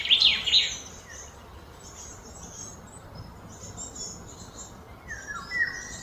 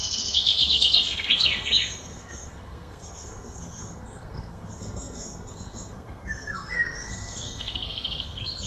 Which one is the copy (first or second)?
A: second